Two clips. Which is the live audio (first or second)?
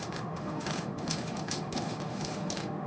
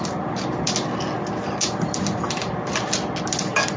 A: second